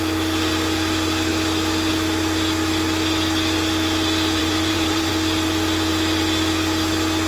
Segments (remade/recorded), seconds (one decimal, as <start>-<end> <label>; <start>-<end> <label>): 0.0-4.4 recorded; 4.4-5.1 remade; 5.1-7.3 recorded